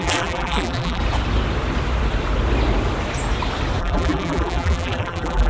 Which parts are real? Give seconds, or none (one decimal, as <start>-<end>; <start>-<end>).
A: 1.0-3.8